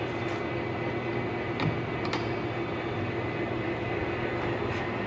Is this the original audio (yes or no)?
yes